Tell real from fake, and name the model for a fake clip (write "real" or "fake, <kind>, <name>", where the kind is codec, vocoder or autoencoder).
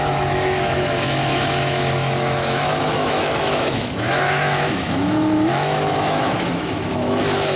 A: fake, autoencoder, DAC-VAE